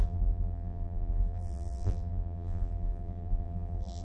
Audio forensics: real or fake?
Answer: fake